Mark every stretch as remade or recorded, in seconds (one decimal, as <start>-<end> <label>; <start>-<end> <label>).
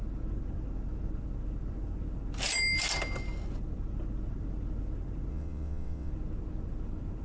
0.0-5.3 recorded; 5.3-6.1 remade; 6.1-7.2 recorded